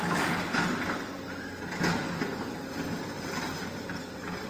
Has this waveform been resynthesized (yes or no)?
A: no